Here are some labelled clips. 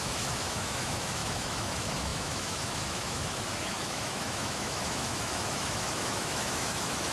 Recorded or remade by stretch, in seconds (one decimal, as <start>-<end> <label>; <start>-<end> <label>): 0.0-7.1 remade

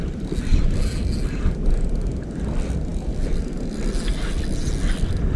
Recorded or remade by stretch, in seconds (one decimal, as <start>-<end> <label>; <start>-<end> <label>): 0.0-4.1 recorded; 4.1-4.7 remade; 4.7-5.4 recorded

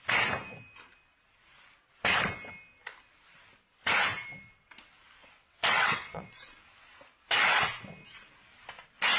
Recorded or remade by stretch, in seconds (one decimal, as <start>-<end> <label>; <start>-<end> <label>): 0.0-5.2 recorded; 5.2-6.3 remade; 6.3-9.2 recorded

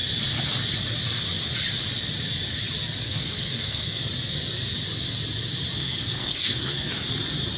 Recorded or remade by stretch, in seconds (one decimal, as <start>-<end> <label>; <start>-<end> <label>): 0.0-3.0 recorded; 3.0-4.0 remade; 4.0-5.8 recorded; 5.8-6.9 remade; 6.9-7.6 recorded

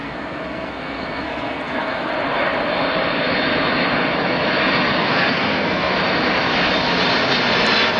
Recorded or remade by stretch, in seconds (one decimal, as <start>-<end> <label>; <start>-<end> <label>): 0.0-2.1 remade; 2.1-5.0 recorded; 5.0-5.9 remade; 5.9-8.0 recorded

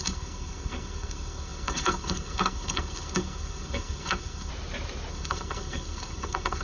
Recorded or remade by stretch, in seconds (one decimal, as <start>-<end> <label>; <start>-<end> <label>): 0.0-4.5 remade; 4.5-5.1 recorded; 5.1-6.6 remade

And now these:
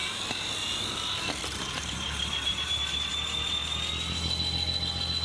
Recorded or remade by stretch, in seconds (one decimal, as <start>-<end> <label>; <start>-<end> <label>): 0.0-3.1 remade; 3.1-5.2 recorded